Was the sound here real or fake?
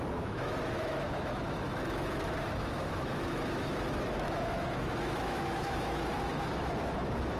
fake